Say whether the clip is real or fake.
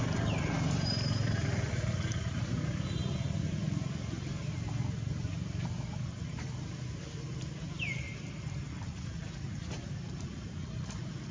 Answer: real